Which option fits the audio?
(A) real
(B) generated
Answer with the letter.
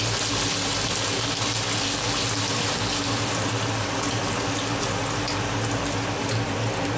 A